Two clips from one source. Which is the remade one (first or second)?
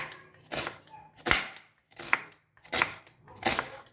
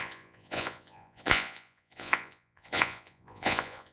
second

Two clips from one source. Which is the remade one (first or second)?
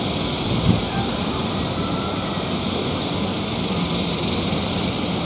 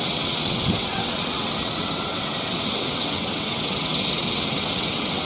second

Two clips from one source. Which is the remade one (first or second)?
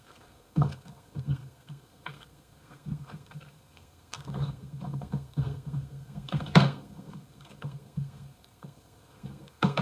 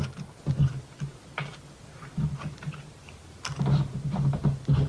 first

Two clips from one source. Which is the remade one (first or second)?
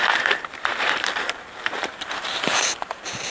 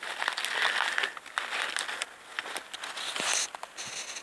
first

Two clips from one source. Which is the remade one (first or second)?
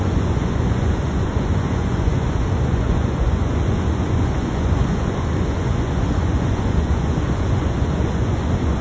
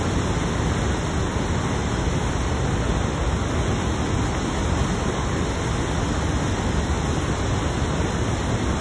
first